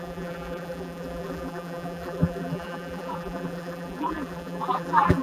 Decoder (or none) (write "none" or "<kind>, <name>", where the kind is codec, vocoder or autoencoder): vocoder, BigVGAN v2